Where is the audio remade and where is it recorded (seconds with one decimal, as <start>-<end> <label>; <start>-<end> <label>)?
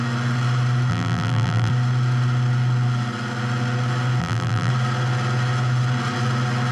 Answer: 0.0-0.9 recorded; 0.9-1.7 remade; 1.7-4.2 recorded; 4.2-4.7 remade; 4.7-6.7 recorded